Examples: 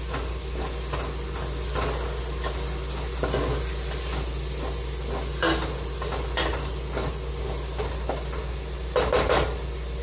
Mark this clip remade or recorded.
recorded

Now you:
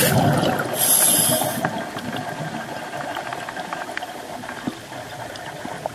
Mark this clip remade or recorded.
recorded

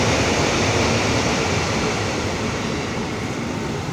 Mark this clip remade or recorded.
remade